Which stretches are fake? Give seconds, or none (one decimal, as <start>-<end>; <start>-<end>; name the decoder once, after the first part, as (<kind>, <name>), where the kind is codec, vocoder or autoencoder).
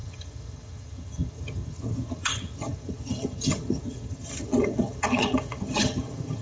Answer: 0.0-6.4 (vocoder, HiFi-GAN)